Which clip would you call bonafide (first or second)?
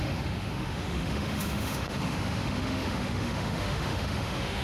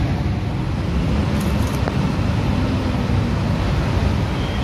second